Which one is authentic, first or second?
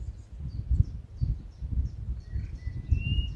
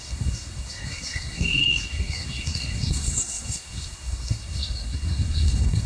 first